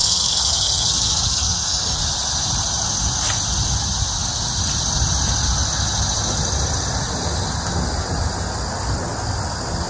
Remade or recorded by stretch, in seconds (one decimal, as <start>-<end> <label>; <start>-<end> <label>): 0.0-2.0 remade; 2.0-9.9 recorded

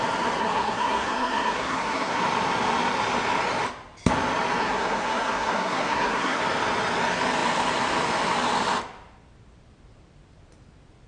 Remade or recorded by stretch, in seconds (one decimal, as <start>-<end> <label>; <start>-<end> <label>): 0.0-0.4 recorded; 0.4-2.2 remade; 2.2-4.6 recorded; 4.6-6.4 remade; 6.4-11.1 recorded